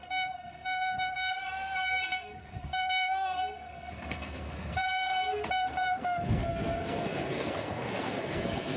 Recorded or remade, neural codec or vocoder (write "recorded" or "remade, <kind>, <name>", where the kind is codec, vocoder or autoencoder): remade, codec, SNAC